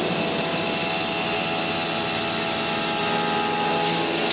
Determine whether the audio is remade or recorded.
recorded